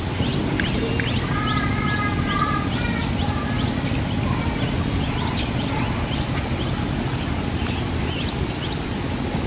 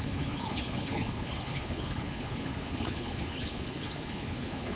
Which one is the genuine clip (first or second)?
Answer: first